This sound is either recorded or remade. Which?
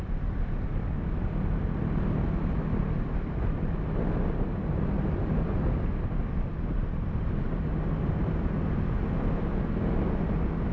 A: recorded